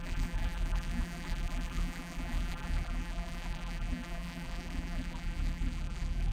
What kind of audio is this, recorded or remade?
remade